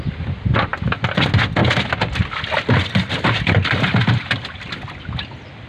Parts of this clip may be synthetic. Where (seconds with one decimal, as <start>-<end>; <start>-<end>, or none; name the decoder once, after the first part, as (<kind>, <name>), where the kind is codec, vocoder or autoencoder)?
none